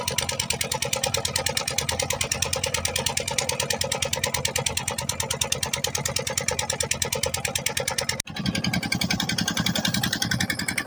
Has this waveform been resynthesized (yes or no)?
no